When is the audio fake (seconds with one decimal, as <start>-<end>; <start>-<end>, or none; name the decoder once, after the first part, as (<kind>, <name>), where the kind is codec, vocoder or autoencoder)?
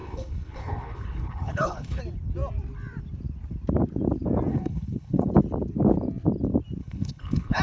0.0-2.0 (codec, HILCodec); 4.5-5.3; 6.8-7.6